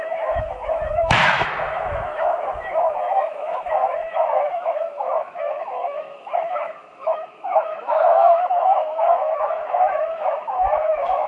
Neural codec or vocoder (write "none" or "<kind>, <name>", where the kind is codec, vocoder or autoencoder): autoencoder, DAC-VAE